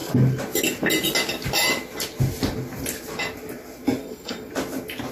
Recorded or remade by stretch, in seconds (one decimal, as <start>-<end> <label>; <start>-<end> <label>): 0.0-4.0 recorded; 4.0-4.5 remade; 4.5-5.1 recorded